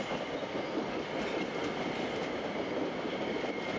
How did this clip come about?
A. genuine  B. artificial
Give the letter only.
A